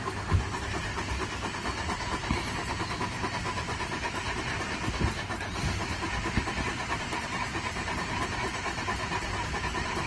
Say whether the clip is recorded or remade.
recorded